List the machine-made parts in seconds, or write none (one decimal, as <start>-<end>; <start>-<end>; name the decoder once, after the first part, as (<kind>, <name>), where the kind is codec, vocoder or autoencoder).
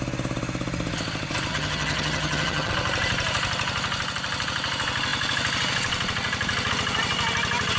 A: 1.5-2.7 (vocoder, HiFi-GAN)